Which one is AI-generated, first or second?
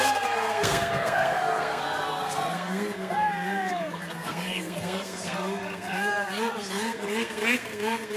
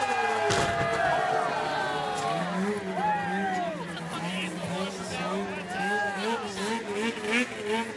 first